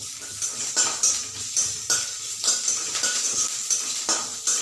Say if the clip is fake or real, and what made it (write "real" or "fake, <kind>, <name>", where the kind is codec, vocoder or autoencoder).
real